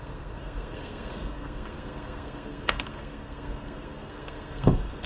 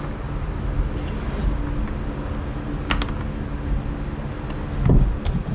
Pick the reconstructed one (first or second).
first